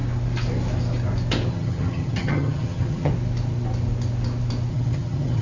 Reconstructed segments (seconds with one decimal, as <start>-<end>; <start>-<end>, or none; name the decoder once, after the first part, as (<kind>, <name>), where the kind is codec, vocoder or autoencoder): 1.5-3.1 (vocoder, HiFi-GAN); 4.7-5.4